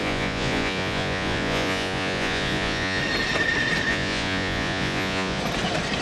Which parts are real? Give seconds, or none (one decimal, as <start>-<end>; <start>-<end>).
3.0-3.9; 5.4-6.0